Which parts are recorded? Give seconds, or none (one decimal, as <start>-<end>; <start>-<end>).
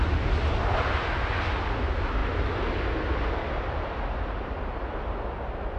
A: 0.0-5.8